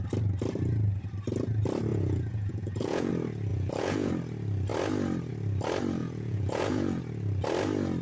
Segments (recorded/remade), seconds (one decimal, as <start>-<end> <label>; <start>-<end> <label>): 0.0-1.9 recorded; 1.9-3.1 remade; 3.1-3.5 recorded; 3.5-4.1 remade; 4.1-6.0 recorded; 6.0-7.0 remade; 7.0-8.0 recorded